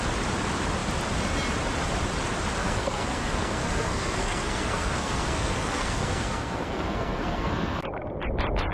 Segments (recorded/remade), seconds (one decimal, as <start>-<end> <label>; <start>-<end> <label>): 0.0-2.6 recorded; 2.6-7.8 remade; 7.8-8.7 recorded